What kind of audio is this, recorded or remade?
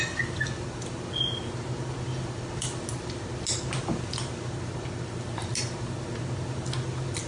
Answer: recorded